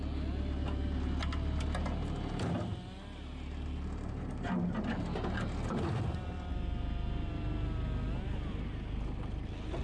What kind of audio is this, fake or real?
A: real